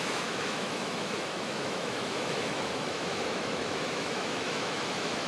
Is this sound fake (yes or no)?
yes